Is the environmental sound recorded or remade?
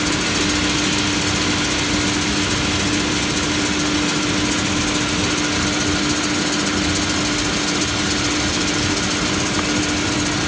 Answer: recorded